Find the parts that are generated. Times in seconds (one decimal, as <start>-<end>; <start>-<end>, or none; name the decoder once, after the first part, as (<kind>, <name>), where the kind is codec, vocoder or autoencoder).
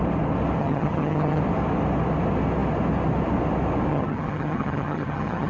0.6-1.4 (vocoder, HiFi-GAN); 3.9-5.5